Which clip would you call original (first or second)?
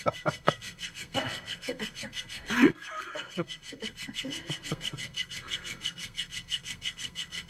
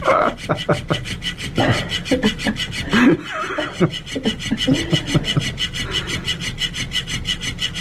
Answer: second